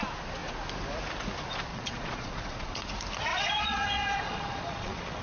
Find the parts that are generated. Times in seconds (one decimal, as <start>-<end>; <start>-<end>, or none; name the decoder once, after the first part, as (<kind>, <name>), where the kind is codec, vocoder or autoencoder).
1.7-2.9 (vocoder, Vocos); 3.3-5.2